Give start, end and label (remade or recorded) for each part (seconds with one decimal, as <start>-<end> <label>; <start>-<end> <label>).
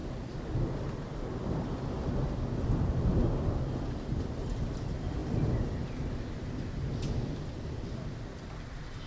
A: 0.0-9.1 recorded